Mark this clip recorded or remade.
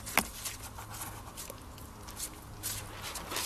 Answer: recorded